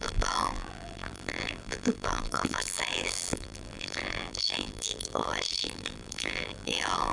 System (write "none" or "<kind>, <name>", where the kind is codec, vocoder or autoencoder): vocoder, BigVGAN v2